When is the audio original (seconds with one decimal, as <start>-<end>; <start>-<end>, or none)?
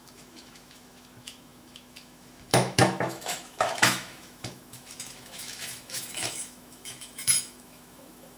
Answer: none